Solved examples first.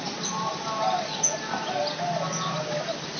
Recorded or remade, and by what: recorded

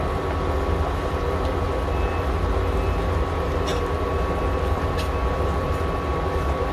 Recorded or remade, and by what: recorded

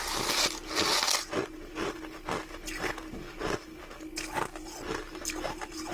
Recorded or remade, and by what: recorded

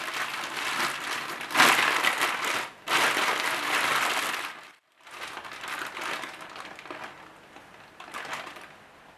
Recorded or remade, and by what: recorded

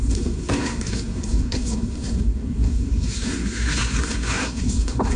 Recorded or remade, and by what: remade, codec, SNAC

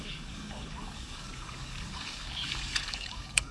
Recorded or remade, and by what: remade, codec, DAC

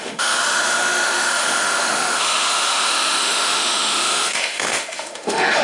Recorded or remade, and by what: remade, autoencoder, DAC-VAE